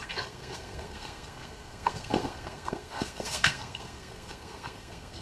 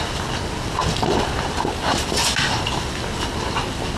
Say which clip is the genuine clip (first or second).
second